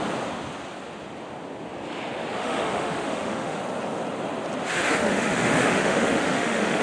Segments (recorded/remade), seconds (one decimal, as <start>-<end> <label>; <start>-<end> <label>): 0.0-2.4 recorded; 2.4-3.6 remade; 3.6-4.7 recorded; 4.7-6.8 remade